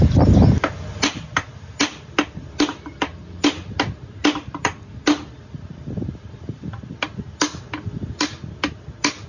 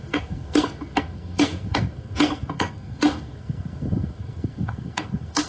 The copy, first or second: second